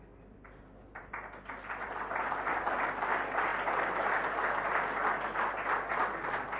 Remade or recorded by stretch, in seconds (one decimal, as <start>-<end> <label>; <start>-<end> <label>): 0.0-6.6 recorded